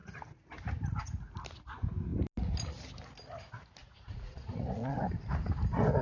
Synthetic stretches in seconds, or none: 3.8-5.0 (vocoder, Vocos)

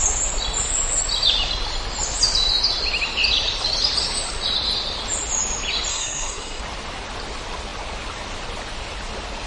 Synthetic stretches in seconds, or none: 5.9-6.6 (codec, SNAC)